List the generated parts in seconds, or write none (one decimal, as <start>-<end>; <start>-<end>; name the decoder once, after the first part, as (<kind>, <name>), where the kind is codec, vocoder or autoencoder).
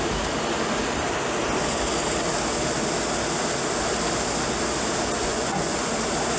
5.2-5.9 (vocoder, Vocos)